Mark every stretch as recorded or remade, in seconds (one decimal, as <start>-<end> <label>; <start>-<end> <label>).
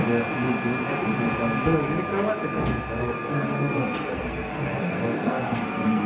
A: 0.0-3.0 recorded; 3.0-6.1 remade